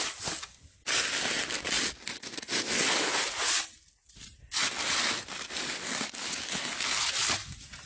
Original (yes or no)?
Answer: yes